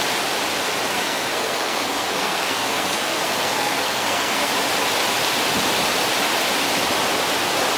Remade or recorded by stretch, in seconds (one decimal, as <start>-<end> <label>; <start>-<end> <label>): 0.0-0.9 recorded; 0.9-4.5 remade; 4.5-7.8 recorded